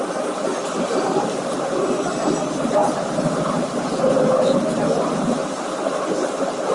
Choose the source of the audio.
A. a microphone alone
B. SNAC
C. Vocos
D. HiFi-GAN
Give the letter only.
A